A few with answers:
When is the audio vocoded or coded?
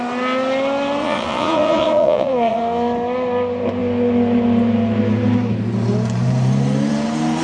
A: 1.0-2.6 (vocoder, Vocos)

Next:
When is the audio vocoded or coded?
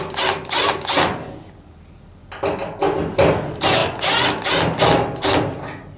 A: none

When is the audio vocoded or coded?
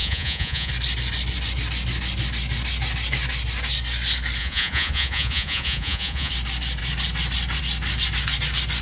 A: 0.0-0.7 (vocoder, Vocos); 4.4-6.3